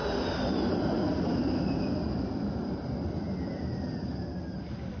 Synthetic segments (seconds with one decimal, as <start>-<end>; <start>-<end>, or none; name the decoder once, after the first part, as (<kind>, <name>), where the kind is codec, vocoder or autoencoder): 2.6-3.6 (vocoder, BigVGAN v2)